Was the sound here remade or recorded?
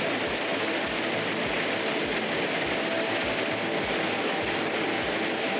recorded